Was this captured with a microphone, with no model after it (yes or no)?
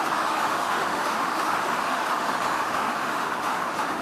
no